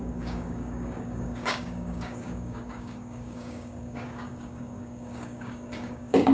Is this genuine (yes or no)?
no